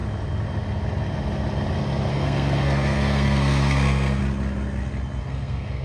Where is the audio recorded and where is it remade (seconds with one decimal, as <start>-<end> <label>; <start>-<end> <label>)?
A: 0.0-2.1 recorded; 2.1-4.2 remade; 4.2-5.2 recorded; 5.2-5.8 remade